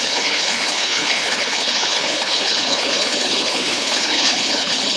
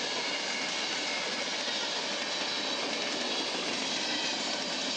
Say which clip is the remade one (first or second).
first